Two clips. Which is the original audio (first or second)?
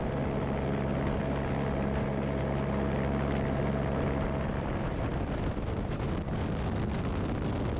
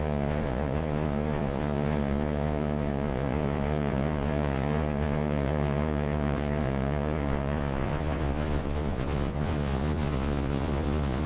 first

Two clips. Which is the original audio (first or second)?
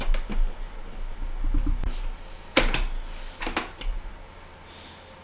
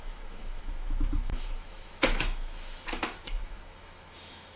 first